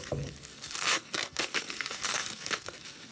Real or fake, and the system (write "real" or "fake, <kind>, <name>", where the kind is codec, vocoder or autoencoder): fake, codec, SNAC